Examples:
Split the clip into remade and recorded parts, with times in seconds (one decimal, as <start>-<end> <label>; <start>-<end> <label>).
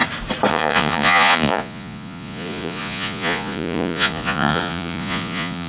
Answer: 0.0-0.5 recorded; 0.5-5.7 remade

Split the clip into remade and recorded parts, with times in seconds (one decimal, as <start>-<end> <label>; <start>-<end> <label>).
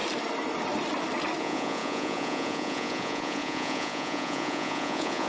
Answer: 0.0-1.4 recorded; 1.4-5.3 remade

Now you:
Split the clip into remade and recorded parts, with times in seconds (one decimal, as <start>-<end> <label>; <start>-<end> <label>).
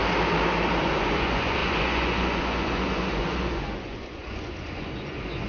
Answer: 0.0-0.8 recorded; 0.8-5.5 remade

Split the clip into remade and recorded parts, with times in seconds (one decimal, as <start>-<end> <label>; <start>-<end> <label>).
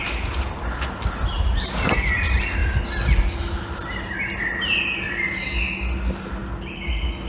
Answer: 0.0-7.3 recorded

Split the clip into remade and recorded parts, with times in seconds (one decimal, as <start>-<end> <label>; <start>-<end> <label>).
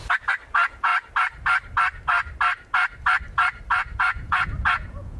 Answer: 0.0-0.5 recorded; 0.5-0.9 remade; 0.9-4.0 recorded; 4.0-5.2 remade